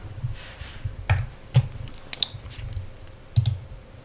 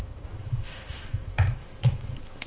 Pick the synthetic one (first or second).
second